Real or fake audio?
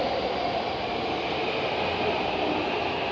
real